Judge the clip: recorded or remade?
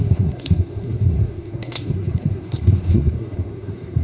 remade